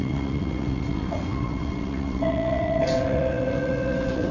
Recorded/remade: remade